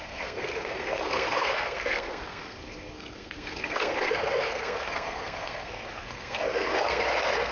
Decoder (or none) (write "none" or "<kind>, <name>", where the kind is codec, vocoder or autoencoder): codec, SNAC